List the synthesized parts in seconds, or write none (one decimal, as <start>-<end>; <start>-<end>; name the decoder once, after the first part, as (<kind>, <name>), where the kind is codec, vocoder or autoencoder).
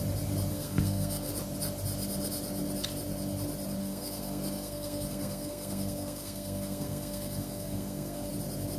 0.5-1.3 (codec, SNAC); 3.8-8.3